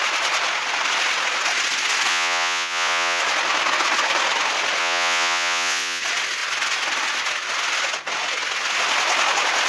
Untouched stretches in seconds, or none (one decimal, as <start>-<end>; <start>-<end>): 0.0-2.1; 3.2-4.8; 6.0-9.7